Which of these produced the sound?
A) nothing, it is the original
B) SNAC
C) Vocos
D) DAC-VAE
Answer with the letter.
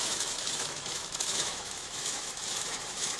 D